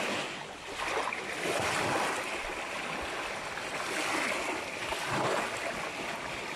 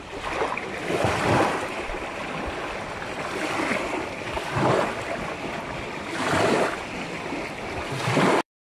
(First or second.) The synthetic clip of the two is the second